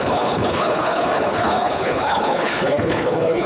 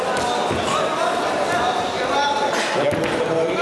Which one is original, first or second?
second